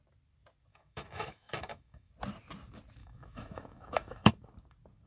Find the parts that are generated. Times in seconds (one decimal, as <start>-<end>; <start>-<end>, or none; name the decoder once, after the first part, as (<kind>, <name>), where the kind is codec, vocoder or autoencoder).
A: 0.7-2.1 (autoencoder, DAC-VAE); 3.0-4.3